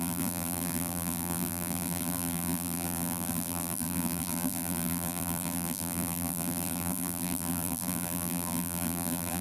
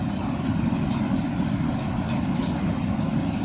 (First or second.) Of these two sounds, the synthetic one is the first